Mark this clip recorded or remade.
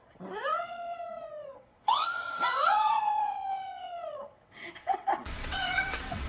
remade